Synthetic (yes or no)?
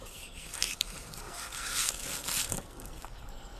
yes